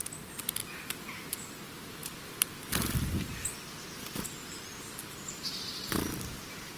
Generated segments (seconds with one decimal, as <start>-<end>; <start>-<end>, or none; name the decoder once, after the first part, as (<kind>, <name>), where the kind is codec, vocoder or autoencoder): 0.6-1.6 (vocoder, BigVGAN v2)